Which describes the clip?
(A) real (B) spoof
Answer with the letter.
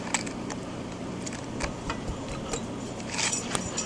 A